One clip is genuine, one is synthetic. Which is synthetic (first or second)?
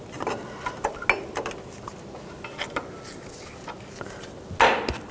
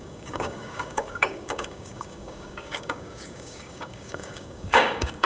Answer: second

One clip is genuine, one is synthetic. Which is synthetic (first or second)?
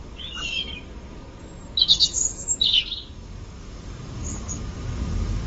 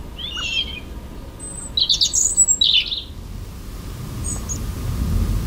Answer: first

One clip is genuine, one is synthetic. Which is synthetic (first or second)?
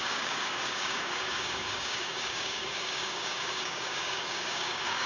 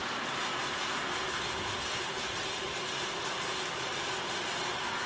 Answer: first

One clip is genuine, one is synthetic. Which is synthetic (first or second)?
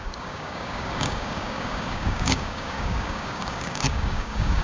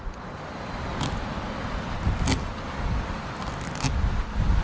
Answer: first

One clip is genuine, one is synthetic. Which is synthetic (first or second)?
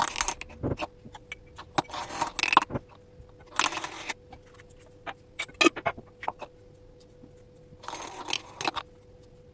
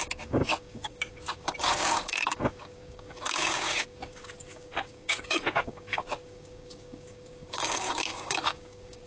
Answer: second